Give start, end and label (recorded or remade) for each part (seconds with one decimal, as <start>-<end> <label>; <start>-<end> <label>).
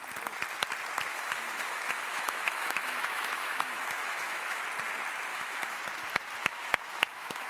0.0-1.1 recorded; 1.1-4.6 remade; 4.6-5.3 recorded; 5.3-5.8 remade; 5.8-6.4 recorded; 6.4-7.5 remade